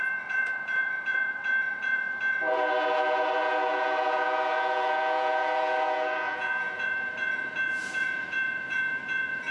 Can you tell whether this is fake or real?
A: fake